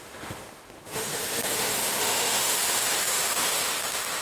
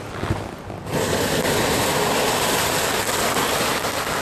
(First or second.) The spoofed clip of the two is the first